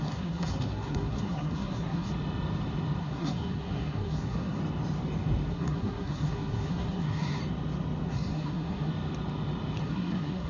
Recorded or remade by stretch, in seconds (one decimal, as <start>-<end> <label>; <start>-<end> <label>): 0.0-2.1 remade; 2.1-3.0 recorded; 3.0-4.6 remade; 4.6-5.5 recorded; 5.5-7.4 remade; 7.4-8.1 recorded; 8.1-8.9 remade; 8.9-9.8 recorded; 9.8-10.5 remade